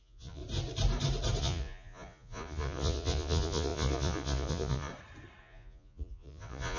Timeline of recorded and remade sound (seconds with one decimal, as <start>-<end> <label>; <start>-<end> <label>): 0.0-0.4 remade; 0.4-1.4 recorded; 1.4-4.9 remade; 4.9-5.4 recorded; 5.4-6.8 remade